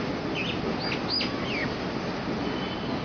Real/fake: real